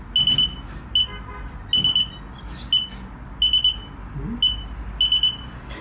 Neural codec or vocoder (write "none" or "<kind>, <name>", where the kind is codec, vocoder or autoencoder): none